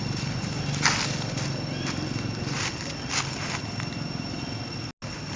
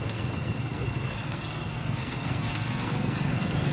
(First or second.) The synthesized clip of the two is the second